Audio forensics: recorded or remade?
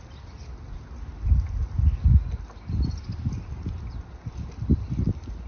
recorded